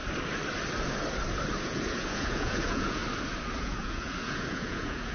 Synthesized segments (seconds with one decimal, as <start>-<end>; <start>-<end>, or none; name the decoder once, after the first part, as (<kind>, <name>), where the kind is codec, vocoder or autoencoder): 1.6-3.0 (vocoder, Vocos); 3.6-5.1